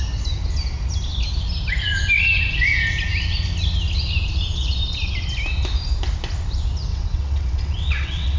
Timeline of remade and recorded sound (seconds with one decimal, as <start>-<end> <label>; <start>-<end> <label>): 0.0-6.9 recorded; 6.9-8.4 remade